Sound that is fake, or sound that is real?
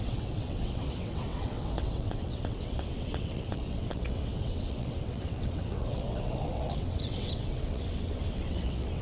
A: fake